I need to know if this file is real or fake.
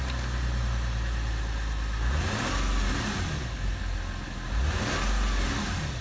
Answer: real